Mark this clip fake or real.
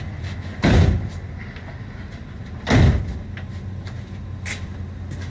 real